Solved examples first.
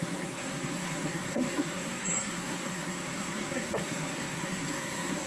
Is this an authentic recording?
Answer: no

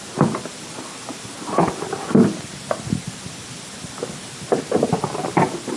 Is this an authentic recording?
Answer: yes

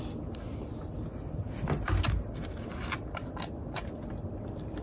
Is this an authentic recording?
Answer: yes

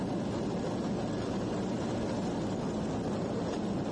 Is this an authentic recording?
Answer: yes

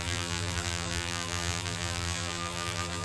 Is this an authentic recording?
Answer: no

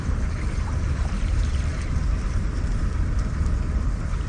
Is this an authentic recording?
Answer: no